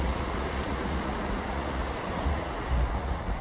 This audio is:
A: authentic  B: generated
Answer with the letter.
B